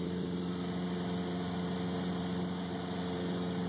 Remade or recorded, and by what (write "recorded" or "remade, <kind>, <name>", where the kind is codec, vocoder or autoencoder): remade, vocoder, BigVGAN v2